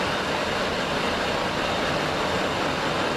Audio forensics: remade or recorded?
recorded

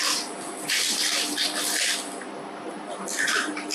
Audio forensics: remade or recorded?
remade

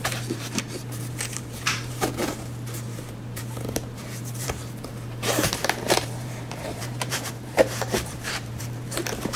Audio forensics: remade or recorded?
remade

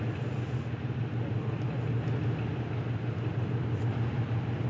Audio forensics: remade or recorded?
recorded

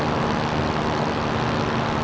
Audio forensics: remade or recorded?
recorded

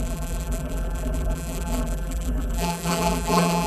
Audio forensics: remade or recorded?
remade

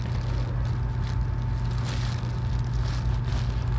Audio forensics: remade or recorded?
recorded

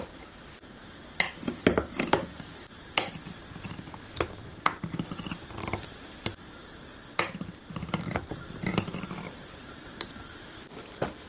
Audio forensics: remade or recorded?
remade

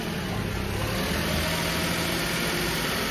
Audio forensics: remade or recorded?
recorded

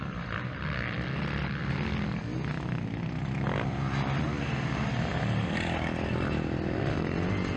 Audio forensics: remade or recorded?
recorded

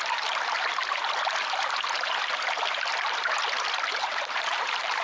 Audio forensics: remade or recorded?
remade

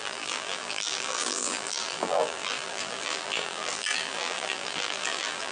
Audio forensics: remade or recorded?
remade